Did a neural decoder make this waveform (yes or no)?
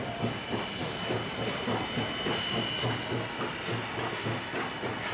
no